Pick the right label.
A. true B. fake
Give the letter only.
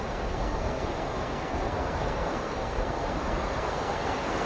B